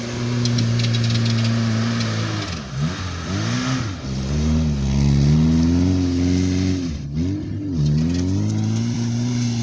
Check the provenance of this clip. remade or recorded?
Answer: recorded